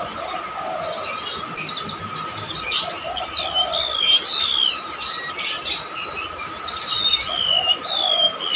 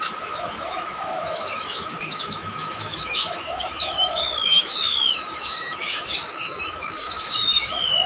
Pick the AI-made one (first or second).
second